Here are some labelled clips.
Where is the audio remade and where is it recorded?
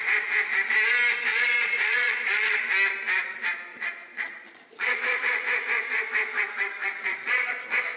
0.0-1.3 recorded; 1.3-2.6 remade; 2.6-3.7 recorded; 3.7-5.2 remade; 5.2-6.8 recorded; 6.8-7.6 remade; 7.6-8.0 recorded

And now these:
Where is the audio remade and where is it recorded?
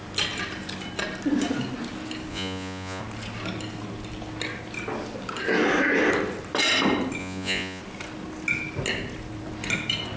0.0-2.3 recorded; 2.3-3.0 remade; 3.0-7.2 recorded; 7.2-7.8 remade; 7.8-10.2 recorded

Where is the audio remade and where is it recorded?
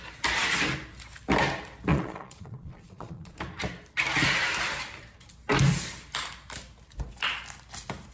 0.0-1.9 recorded; 1.9-3.4 remade; 3.4-8.1 recorded